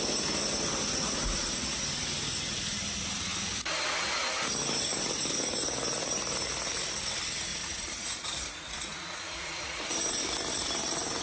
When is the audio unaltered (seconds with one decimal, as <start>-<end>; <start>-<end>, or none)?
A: 0.0-7.5; 10.0-11.2